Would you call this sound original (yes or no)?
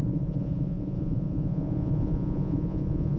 no